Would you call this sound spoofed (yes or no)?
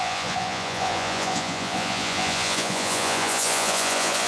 yes